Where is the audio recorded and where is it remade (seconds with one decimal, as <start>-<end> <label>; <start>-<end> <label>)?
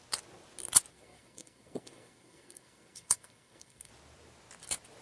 0.0-0.9 recorded; 0.9-3.9 remade; 3.9-5.0 recorded